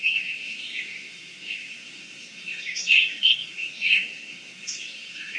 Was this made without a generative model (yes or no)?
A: no